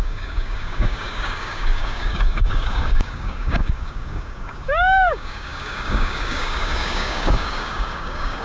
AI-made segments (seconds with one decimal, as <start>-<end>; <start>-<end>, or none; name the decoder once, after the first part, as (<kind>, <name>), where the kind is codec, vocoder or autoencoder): 0.0-8.4 (codec, DAC)